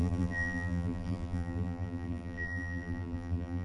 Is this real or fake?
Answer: fake